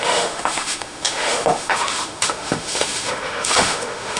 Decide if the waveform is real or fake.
fake